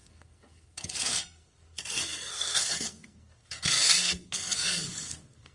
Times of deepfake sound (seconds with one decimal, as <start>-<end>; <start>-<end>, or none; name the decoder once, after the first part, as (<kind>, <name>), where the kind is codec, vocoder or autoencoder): 0.0-5.5 (codec, SNAC)